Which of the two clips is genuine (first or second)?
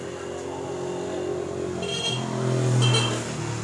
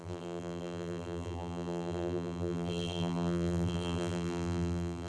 first